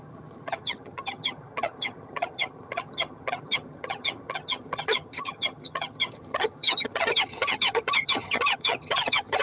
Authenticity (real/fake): fake